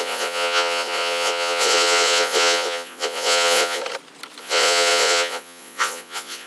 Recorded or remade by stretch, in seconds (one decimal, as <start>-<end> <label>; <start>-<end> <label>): 0.0-3.8 remade; 3.8-4.4 recorded; 4.4-6.5 remade